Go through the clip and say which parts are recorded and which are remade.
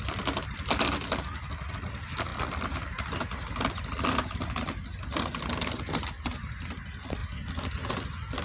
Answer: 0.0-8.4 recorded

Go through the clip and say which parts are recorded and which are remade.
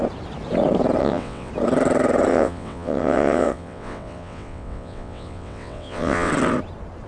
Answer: 0.0-1.0 recorded; 1.0-1.5 remade; 1.5-2.3 recorded; 2.3-6.3 remade; 6.3-7.1 recorded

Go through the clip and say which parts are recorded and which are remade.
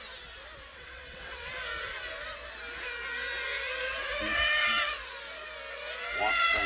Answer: 0.0-0.7 recorded; 0.7-1.5 remade; 1.5-6.7 recorded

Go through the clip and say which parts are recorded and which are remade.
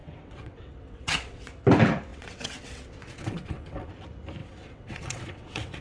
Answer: 0.0-1.5 remade; 1.5-2.1 recorded; 2.1-3.9 remade; 3.9-4.4 recorded; 4.4-5.8 remade